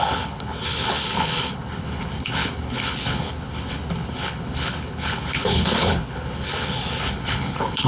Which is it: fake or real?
fake